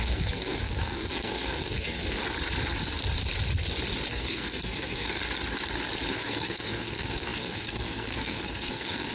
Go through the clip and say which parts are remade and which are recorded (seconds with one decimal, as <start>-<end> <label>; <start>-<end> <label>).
0.0-2.2 remade; 2.2-4.1 recorded; 4.1-5.2 remade; 5.2-6.1 recorded; 6.1-9.1 remade